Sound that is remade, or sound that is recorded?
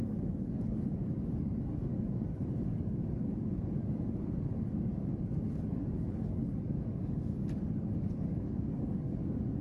remade